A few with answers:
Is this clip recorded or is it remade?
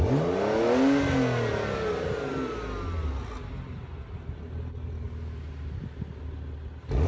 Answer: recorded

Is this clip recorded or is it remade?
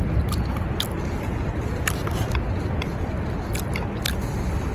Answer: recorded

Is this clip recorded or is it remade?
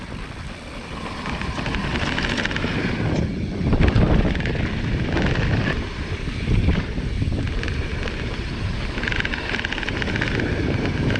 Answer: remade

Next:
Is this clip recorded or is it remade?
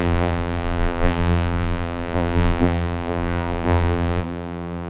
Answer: remade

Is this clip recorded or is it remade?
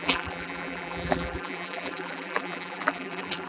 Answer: remade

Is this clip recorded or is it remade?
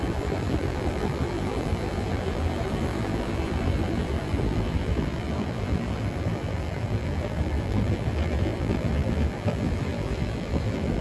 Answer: remade